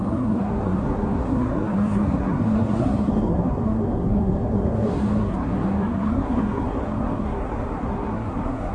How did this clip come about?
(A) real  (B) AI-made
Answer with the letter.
B